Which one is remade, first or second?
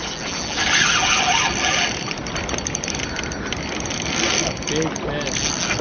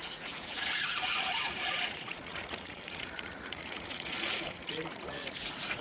second